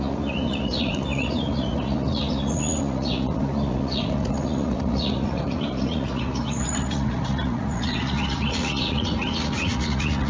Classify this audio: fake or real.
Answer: fake